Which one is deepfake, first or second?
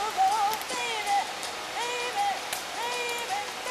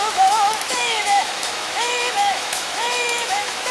second